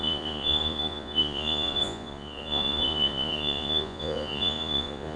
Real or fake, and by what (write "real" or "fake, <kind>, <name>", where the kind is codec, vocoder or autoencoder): fake, vocoder, Vocos